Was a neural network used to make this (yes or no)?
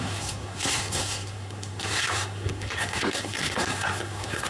yes